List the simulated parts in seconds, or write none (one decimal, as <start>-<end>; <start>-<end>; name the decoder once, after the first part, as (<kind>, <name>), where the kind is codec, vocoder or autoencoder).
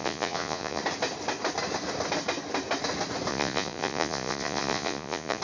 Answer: 0.0-0.8 (vocoder, Vocos); 3.3-5.4